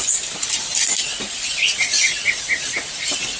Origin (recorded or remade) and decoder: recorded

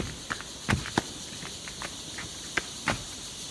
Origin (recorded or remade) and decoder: recorded